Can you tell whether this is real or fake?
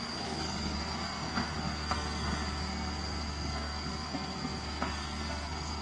fake